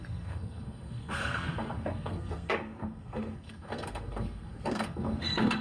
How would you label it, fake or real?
fake